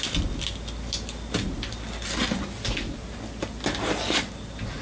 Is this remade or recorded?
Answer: recorded